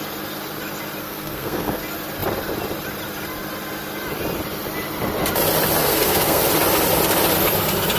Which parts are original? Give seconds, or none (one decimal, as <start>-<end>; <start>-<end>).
0.0-1.0; 1.8-5.8; 6.4-8.0